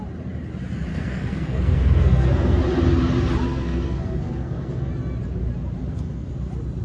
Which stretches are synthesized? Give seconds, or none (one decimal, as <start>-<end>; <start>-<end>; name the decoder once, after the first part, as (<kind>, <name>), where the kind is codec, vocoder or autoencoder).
0.9-2.6 (codec, SNAC); 3.5-4.9; 5.8-6.3